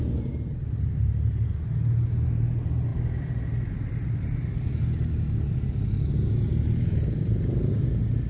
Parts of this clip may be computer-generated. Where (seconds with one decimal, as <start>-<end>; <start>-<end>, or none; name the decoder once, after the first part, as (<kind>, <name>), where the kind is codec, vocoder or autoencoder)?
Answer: none